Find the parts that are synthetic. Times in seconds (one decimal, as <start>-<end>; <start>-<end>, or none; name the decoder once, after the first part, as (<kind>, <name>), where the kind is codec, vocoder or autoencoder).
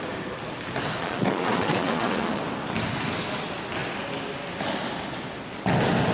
1.0-2.4 (vocoder, Vocos)